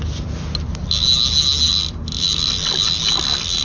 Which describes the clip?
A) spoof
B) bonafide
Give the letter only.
B